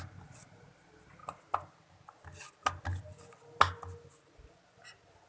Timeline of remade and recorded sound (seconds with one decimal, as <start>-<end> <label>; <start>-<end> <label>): 0.0-5.3 recorded